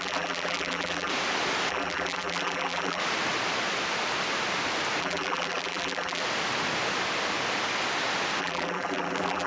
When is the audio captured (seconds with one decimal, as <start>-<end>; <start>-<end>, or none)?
1.1-1.7; 3.0-5.0; 6.2-8.4